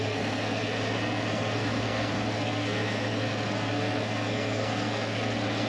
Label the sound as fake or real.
fake